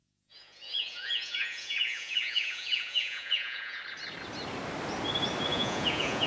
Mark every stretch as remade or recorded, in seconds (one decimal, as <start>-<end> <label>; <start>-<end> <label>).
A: 0.0-3.8 remade; 3.8-5.5 recorded; 5.5-6.3 remade